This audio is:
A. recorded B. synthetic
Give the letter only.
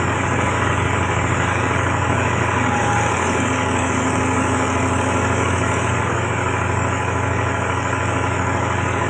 B